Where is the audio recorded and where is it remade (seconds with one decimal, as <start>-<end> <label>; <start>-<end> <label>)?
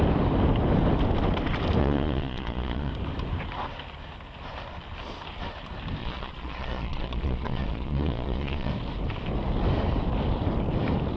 0.0-1.8 recorded; 1.8-2.9 remade; 2.9-6.0 recorded; 6.0-8.7 remade; 8.7-11.2 recorded